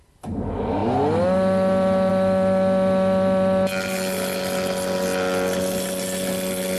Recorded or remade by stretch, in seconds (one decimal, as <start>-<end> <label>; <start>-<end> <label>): 0.0-6.8 recorded